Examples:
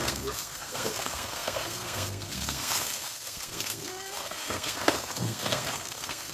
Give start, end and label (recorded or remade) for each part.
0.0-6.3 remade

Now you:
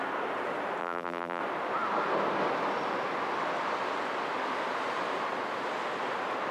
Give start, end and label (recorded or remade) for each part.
0.0-0.8 recorded; 0.8-1.4 remade; 1.4-6.5 recorded

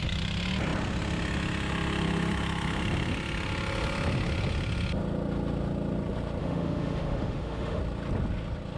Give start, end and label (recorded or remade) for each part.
0.0-6.4 recorded; 6.4-7.8 remade; 7.8-8.8 recorded

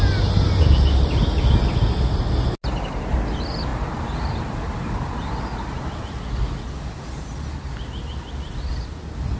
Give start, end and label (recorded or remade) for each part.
0.0-9.4 recorded

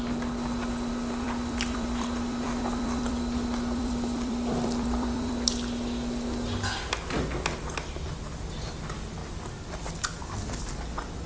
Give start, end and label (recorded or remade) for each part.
0.0-0.9 recorded; 0.9-5.3 remade; 5.3-11.3 recorded